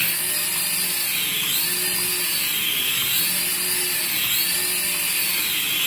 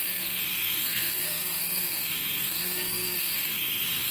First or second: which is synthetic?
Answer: second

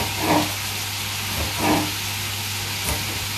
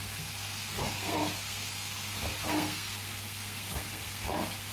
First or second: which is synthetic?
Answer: second